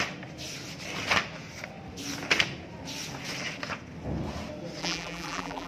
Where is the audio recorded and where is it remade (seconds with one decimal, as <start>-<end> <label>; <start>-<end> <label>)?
0.0-4.8 recorded; 4.8-5.7 remade